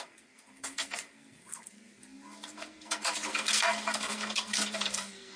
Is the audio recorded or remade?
remade